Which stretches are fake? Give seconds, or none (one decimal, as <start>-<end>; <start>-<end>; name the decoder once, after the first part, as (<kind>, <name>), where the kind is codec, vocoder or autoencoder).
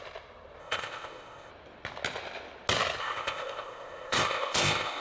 0.6-1.5 (codec, ZipCodec); 3.0-5.0